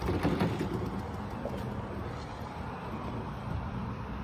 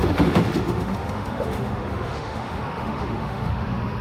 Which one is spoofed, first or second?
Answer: second